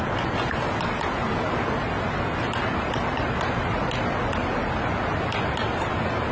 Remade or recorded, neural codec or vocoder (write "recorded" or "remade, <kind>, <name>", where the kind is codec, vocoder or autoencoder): recorded